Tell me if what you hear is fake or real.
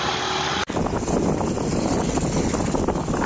real